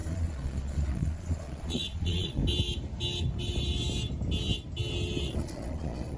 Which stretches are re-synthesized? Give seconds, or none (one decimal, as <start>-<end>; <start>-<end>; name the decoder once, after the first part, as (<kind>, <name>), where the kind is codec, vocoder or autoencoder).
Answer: 0.0-2.4 (vocoder, Vocos); 5.2-6.2